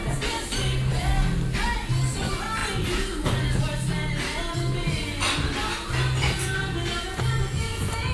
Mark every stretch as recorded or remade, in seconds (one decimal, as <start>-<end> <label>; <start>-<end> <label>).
0.0-8.1 recorded

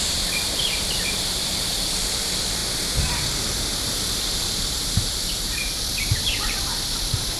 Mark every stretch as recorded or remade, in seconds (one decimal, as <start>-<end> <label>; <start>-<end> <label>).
0.0-2.6 remade; 2.6-4.0 recorded; 4.0-7.4 remade